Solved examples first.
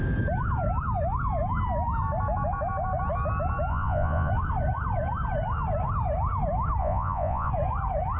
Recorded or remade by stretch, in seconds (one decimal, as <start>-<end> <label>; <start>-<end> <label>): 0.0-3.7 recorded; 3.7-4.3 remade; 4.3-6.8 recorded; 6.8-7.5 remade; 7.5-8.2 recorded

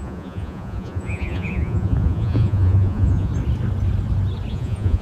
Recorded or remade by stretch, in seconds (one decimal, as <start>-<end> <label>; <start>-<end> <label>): 0.0-3.3 remade; 3.3-4.5 recorded; 4.5-5.0 remade

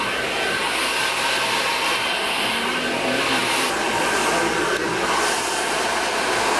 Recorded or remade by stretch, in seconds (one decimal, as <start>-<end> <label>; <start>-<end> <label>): 0.0-6.6 recorded

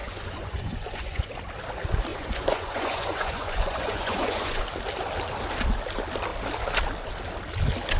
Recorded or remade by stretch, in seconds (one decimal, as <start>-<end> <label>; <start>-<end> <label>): 0.0-1.3 remade; 1.3-2.1 recorded; 2.1-4.6 remade; 4.6-8.0 recorded

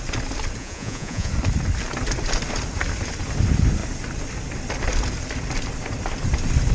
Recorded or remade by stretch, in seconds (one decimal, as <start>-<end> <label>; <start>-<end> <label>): 0.0-0.6 recorded; 0.6-1.3 remade; 1.3-6.7 recorded